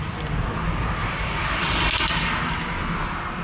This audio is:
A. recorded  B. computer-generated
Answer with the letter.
A